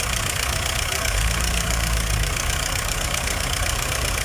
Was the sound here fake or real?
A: fake